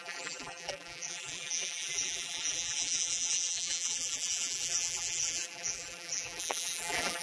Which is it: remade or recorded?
remade